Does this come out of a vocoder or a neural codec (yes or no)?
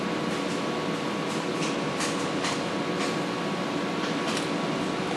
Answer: no